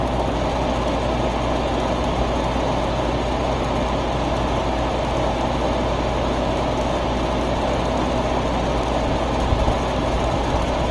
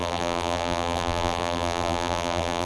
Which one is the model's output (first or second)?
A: second